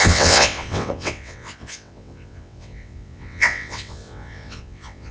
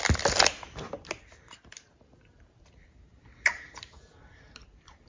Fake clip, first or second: first